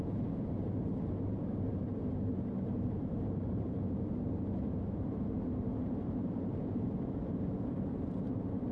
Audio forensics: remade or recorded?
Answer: remade